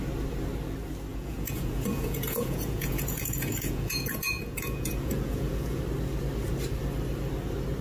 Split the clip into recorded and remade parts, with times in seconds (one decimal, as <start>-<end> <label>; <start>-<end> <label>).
0.0-1.1 recorded; 1.1-5.8 remade; 5.8-7.8 recorded